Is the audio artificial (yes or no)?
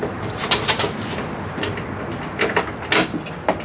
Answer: no